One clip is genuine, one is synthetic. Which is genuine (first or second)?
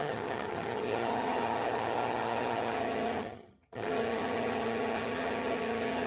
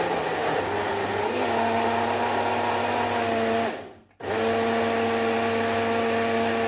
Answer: second